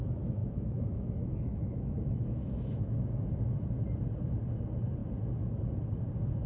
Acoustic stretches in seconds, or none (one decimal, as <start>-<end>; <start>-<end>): 0.0-0.4; 3.3-6.5